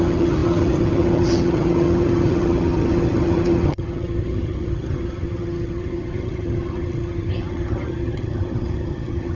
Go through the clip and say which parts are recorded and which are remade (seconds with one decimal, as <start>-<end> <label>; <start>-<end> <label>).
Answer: 0.0-9.3 remade